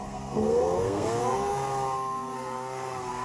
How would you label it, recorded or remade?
remade